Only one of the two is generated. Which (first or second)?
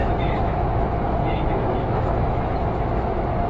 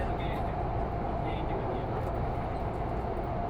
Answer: first